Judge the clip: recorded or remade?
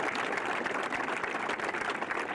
recorded